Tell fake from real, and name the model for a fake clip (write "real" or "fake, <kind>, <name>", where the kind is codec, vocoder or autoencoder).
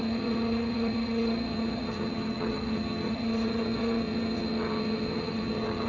fake, vocoder, HiFi-GAN